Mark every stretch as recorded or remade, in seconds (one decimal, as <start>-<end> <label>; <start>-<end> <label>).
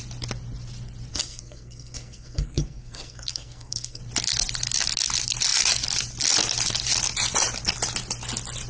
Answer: 0.0-1.1 recorded; 1.1-4.0 remade; 4.0-8.7 recorded